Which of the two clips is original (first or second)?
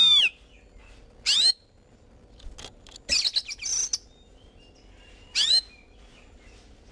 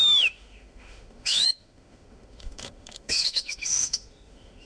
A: first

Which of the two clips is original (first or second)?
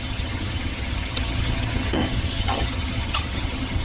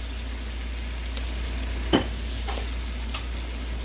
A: second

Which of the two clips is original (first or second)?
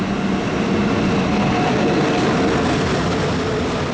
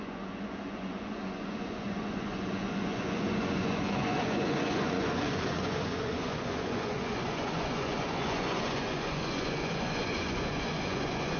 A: first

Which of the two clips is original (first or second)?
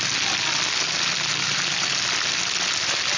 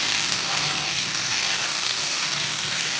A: first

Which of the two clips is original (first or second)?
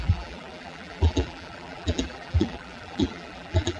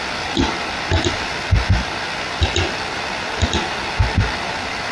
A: second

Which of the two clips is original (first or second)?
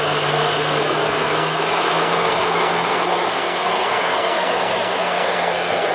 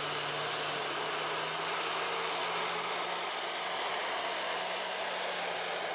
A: second